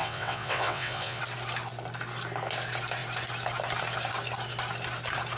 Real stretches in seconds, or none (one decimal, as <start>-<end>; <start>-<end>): 1.2-5.4